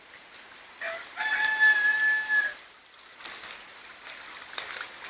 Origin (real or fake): real